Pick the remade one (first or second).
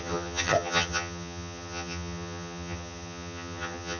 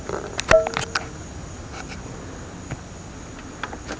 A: first